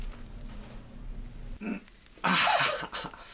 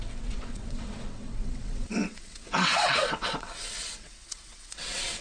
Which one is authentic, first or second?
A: first